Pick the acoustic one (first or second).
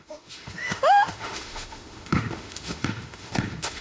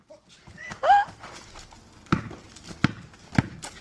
second